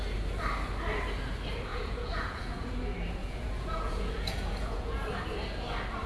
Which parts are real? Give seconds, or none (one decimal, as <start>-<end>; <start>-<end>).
0.0-1.7; 2.8-3.2; 5.1-6.1